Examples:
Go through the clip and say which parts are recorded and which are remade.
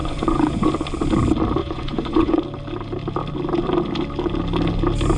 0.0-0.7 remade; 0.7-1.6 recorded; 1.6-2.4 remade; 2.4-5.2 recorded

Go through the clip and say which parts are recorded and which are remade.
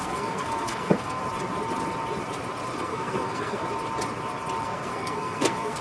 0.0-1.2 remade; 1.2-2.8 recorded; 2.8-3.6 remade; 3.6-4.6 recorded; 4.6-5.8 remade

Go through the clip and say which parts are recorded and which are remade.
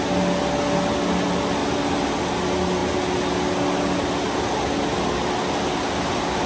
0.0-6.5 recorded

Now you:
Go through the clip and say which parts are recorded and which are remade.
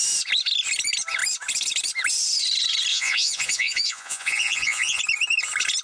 0.0-2.9 recorded; 2.9-5.0 remade; 5.0-5.8 recorded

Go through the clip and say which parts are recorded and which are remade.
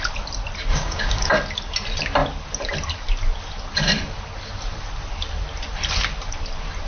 0.0-0.7 recorded; 0.7-1.3 remade; 1.3-6.9 recorded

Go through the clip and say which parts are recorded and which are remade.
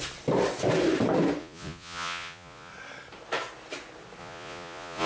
0.0-1.4 recorded; 1.4-2.7 remade; 2.7-4.2 recorded; 4.2-5.1 remade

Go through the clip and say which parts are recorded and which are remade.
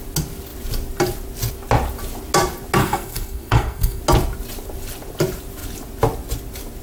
0.0-2.8 recorded; 2.8-4.0 remade; 4.0-6.8 recorded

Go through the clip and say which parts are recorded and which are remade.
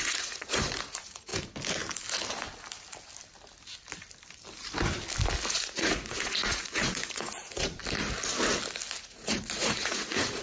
0.0-1.3 remade; 1.3-5.5 recorded; 5.5-7.8 remade; 7.8-9.0 recorded; 9.0-10.4 remade